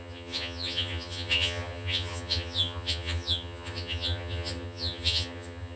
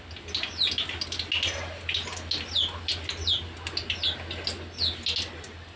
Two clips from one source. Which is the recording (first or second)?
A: second